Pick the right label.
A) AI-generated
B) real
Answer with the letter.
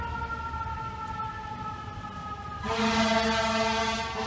B